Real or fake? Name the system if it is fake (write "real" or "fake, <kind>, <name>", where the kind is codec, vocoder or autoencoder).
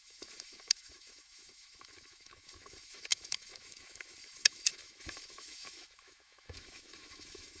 fake, autoencoder, DAC-VAE